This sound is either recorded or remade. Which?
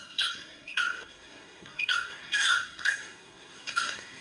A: remade